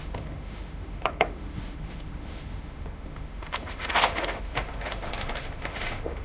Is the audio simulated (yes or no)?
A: yes